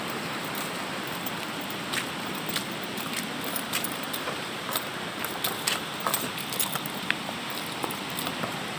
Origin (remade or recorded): remade